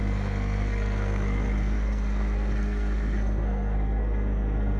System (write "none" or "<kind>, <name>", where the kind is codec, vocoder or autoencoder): codec, SNAC